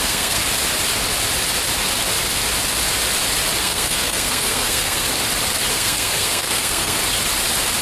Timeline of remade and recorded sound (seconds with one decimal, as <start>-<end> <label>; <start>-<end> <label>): 0.0-0.4 remade; 0.4-3.6 recorded; 3.6-5.1 remade; 5.1-5.7 recorded; 5.7-7.0 remade; 7.0-7.8 recorded